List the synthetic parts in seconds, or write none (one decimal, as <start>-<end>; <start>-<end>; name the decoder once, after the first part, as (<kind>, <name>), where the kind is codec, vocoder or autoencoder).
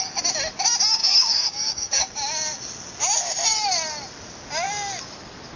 1.0-2.0 (codec, DAC)